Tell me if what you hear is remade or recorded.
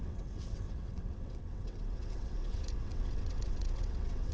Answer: remade